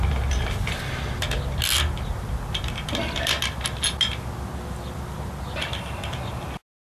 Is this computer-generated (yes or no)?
no